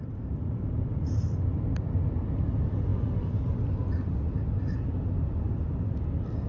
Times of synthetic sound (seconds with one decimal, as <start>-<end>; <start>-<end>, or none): 0.0-2.9